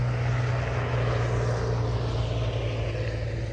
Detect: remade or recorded recorded